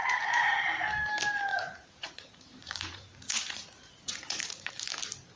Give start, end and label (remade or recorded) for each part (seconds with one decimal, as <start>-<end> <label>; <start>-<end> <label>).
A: 0.0-1.5 recorded; 1.5-4.7 remade; 4.7-5.4 recorded